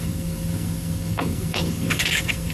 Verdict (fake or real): fake